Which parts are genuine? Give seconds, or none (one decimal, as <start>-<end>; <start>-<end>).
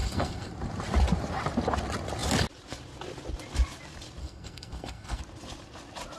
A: 0.5-4.2; 5.2-6.2